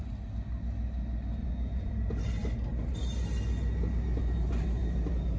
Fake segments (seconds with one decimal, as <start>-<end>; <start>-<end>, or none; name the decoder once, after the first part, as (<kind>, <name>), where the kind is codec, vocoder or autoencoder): 1.4-1.9 (vocoder, Vocos)